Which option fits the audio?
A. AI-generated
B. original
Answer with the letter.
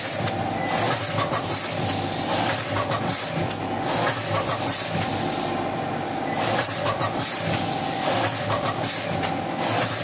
B